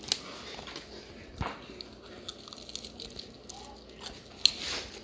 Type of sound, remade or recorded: recorded